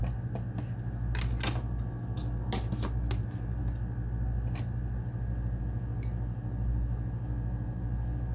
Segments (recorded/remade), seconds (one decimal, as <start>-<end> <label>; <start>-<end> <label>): 0.0-8.3 recorded